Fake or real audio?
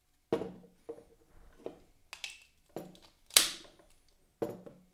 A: real